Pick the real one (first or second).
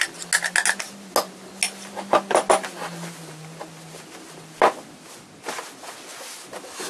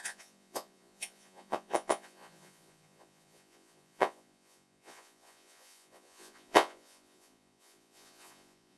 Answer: first